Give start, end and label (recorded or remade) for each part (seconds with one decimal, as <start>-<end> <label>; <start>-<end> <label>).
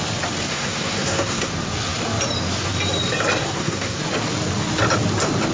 0.0-0.5 recorded; 0.5-1.5 remade; 1.5-3.4 recorded; 3.4-4.0 remade; 4.0-5.5 recorded